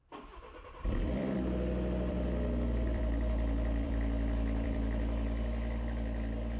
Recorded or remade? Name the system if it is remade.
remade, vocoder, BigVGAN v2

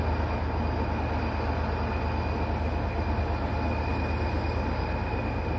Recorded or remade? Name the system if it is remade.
recorded